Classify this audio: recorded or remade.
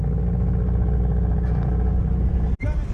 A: recorded